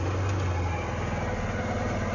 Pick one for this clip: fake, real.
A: real